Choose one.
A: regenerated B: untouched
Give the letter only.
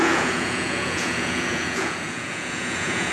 A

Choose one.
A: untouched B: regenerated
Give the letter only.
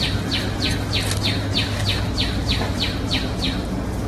A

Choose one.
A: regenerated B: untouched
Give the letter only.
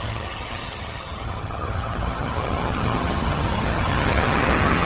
A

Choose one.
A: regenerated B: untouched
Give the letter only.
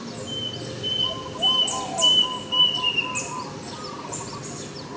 B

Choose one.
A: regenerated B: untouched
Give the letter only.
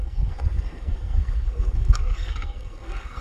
A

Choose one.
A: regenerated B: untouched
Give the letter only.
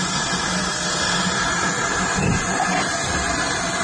B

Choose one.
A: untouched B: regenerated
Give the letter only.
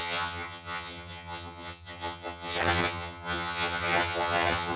B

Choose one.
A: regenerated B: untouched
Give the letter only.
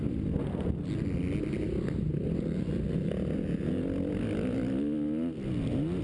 B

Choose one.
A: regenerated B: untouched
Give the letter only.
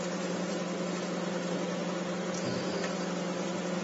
B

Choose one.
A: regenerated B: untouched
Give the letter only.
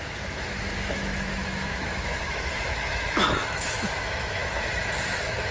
A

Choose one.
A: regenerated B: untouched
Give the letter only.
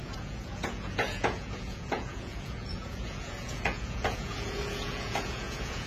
A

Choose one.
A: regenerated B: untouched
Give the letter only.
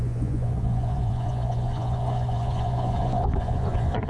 A